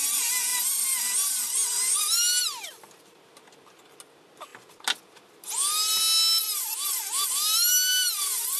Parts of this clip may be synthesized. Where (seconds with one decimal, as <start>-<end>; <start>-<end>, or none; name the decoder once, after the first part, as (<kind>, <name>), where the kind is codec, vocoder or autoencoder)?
none